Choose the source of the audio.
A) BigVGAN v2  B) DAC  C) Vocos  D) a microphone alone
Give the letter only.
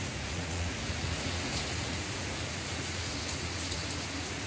C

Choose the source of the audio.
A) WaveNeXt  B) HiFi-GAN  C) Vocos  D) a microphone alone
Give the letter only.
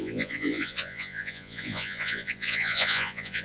C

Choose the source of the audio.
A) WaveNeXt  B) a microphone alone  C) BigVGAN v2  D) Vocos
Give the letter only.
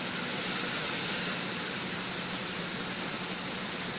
B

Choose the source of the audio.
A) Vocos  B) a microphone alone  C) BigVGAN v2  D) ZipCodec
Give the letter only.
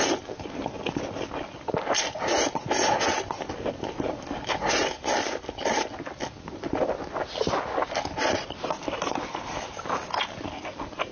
B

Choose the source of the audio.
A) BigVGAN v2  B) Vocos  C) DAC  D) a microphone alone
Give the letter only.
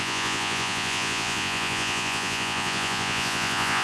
B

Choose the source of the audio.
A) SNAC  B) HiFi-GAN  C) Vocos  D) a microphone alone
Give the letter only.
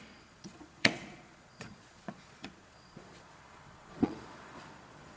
C